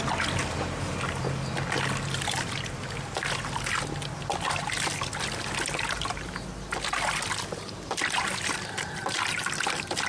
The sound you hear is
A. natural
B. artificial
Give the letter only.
A